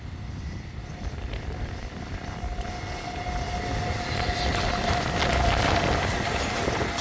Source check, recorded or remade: recorded